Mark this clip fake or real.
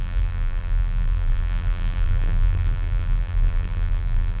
fake